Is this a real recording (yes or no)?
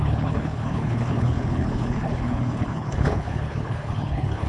no